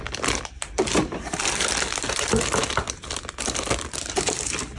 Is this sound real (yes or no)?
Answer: no